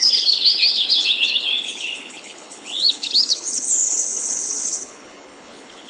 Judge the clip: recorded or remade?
remade